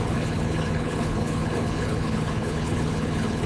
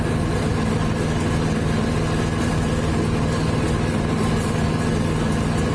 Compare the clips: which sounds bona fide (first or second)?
second